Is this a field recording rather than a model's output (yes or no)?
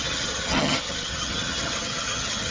no